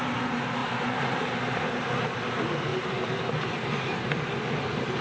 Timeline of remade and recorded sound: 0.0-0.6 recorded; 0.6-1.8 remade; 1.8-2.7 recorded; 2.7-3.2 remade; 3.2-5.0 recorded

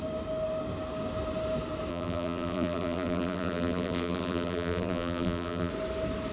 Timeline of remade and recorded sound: 0.0-1.9 recorded; 1.9-5.7 remade; 5.7-6.3 recorded

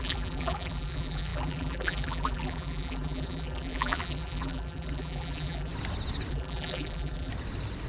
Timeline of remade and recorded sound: 0.0-5.7 remade; 5.7-6.3 recorded; 6.3-7.3 remade; 7.3-7.9 recorded

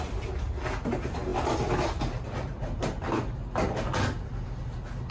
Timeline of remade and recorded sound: 0.0-5.1 recorded

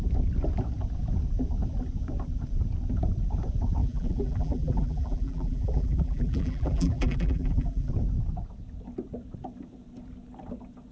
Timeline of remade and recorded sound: 0.0-3.8 recorded; 3.8-7.9 remade; 7.9-10.9 recorded

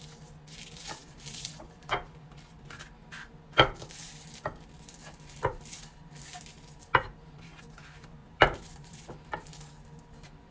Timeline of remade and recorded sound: 0.0-1.0 recorded; 1.0-2.3 remade; 2.3-5.0 recorded; 5.0-6.0 remade; 6.0-8.2 recorded; 8.2-9.1 remade; 9.1-10.5 recorded

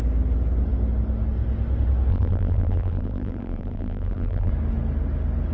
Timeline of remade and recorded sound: 0.0-2.1 recorded; 2.1-4.5 remade; 4.5-5.5 recorded